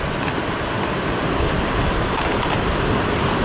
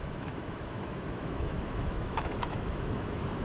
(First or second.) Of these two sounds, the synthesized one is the second